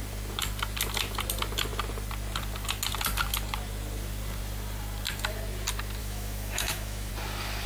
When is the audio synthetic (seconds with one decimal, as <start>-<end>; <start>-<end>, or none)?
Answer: 6.0-7.1